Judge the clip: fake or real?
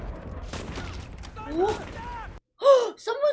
real